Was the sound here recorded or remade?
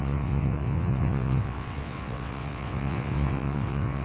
remade